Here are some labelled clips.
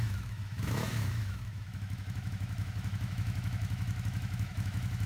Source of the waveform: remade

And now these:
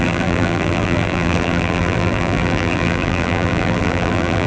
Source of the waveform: remade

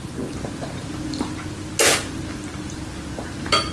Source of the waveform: recorded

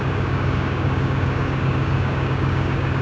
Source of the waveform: remade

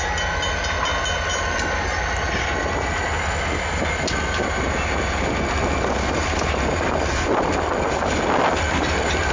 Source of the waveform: recorded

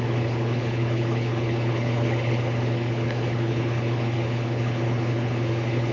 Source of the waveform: remade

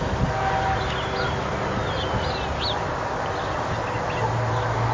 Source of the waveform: recorded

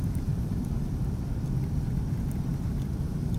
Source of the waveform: remade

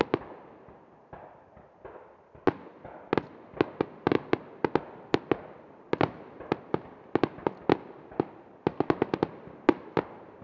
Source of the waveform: recorded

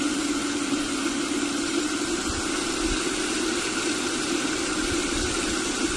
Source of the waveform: recorded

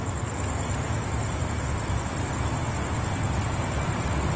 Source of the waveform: recorded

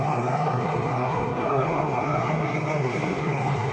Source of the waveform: remade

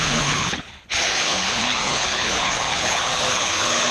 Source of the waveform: remade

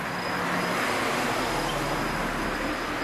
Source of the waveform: recorded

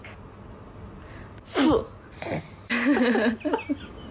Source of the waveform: recorded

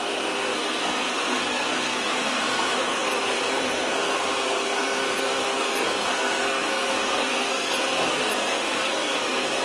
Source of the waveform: remade